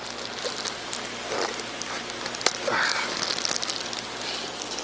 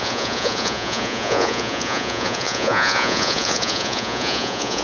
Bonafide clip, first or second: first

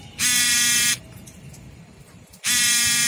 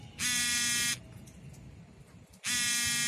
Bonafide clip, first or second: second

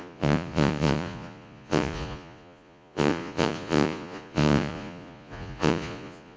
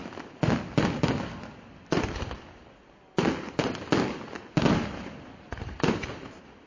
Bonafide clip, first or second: second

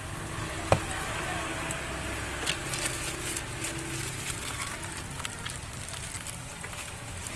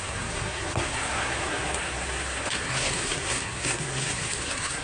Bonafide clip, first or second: first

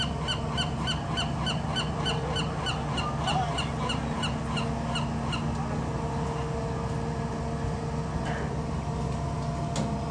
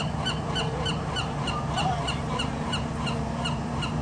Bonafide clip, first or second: first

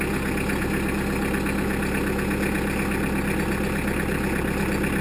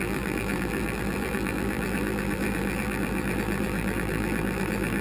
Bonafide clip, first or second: first